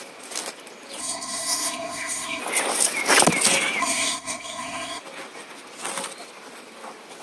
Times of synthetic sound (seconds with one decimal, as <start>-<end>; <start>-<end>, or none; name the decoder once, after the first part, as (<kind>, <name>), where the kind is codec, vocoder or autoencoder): 1.0-2.4 (codec, SNAC); 3.8-5.0